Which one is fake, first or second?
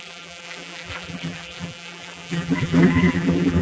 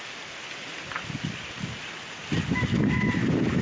first